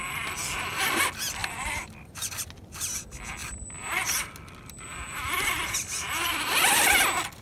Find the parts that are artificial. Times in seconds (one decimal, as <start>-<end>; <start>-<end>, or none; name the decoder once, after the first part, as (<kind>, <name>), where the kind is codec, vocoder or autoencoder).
1.4-3.0 (vocoder, BigVGAN v2); 3.4-7.0